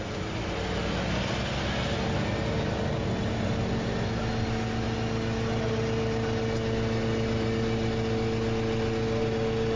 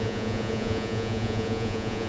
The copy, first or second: second